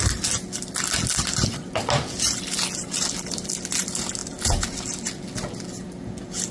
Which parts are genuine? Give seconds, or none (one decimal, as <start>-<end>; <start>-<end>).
0.0-6.5